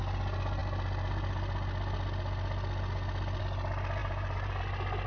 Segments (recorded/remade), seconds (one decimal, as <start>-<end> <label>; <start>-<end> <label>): 0.0-4.0 recorded; 4.0-4.6 remade; 4.6-5.1 recorded